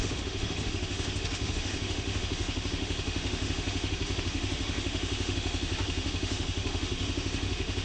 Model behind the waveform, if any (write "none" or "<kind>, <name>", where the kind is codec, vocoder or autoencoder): autoencoder, DAC-VAE